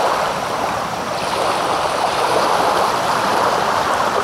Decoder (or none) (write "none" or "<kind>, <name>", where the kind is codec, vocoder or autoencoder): vocoder, BigVGAN v2